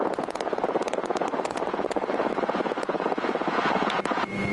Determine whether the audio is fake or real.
fake